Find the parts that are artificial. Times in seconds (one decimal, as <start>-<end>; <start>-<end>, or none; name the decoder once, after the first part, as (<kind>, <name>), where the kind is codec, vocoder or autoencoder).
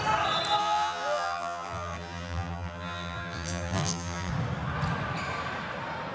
0.6-4.3 (vocoder, BigVGAN v2)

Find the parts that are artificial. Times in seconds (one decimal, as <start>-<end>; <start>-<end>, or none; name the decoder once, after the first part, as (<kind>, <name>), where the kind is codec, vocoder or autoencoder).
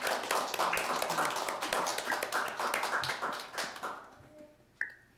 none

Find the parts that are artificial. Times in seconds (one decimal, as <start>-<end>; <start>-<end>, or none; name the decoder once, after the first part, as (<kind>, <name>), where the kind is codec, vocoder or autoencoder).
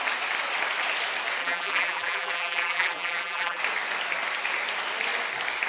1.4-3.6 (vocoder, BigVGAN v2)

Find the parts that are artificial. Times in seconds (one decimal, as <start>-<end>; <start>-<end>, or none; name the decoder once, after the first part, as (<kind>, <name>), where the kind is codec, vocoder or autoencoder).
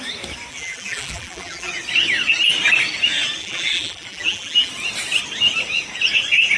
0.5-1.7 (vocoder, BigVGAN v2); 3.4-4.7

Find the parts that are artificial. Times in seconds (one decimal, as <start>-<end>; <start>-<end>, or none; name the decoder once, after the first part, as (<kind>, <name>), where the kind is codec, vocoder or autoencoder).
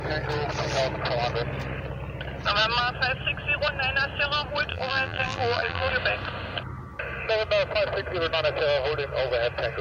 4.7-5.9 (vocoder, BigVGAN v2)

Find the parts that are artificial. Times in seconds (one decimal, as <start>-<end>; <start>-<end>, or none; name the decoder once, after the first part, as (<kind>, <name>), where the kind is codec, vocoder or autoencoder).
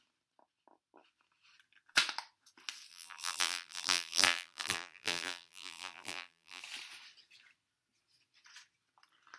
2.9-6.6 (vocoder, BigVGAN v2)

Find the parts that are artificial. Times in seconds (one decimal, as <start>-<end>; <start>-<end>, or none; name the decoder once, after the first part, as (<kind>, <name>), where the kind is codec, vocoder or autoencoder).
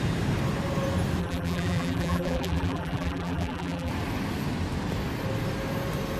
1.2-3.9 (vocoder, BigVGAN v2)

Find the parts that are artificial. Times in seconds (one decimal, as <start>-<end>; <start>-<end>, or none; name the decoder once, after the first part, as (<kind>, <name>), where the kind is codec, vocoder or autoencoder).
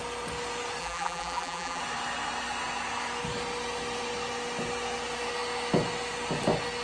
0.8-1.8 (vocoder, BigVGAN v2)